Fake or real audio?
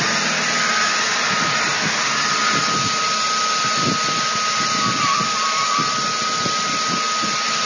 real